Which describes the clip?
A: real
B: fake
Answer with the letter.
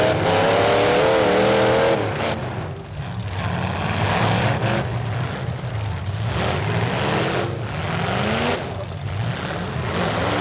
A